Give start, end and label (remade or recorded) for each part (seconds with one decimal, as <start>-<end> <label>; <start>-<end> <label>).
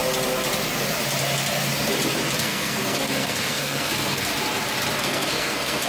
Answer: 0.0-2.4 recorded; 2.4-4.3 remade; 4.3-5.0 recorded; 5.0-5.9 remade